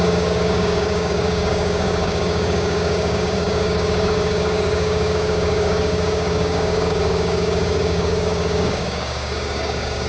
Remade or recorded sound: remade